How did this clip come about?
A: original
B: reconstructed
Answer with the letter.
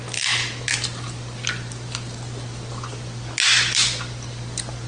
A